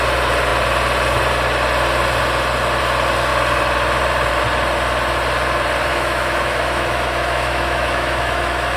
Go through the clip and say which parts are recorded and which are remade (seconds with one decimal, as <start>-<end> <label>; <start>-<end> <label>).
0.0-5.9 recorded; 5.9-8.8 remade